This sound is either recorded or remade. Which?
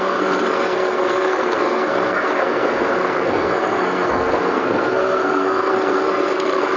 remade